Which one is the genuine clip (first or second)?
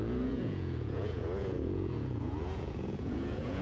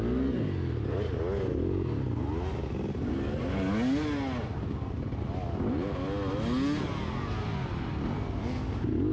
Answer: second